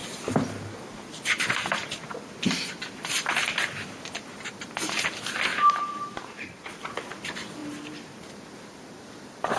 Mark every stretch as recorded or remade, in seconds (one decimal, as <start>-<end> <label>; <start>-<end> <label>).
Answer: 0.0-5.5 recorded; 5.5-6.9 remade; 6.9-7.6 recorded; 7.6-8.3 remade; 8.3-9.6 recorded